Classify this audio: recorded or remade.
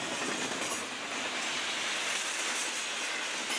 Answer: recorded